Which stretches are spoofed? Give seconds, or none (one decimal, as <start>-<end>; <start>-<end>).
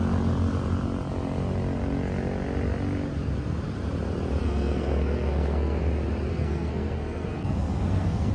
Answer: 4.4-5.8; 6.3-8.3